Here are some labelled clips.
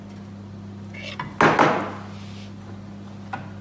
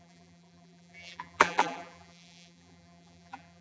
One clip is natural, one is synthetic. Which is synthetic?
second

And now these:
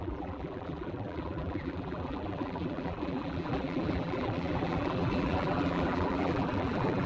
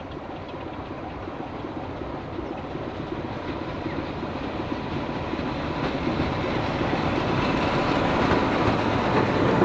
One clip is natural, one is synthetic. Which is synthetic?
first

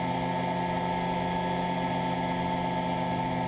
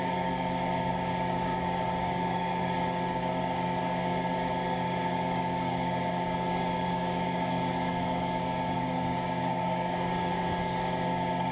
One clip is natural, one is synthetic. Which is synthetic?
second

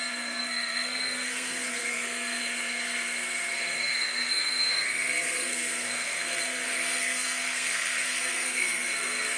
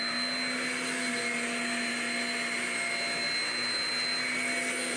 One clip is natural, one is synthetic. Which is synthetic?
first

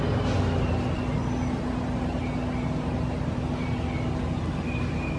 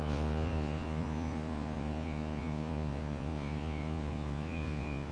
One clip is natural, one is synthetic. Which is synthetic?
second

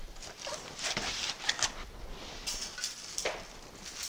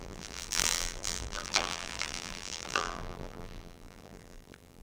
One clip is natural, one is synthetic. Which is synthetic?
second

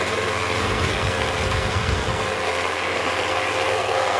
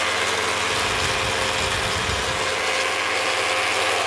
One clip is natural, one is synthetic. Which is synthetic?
first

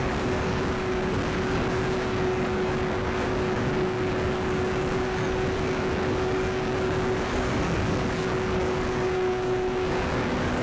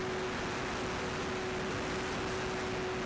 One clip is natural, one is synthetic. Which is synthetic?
first